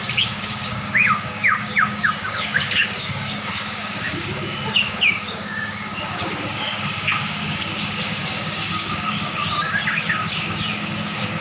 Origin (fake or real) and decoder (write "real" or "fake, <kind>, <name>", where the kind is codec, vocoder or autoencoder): fake, codec, DAC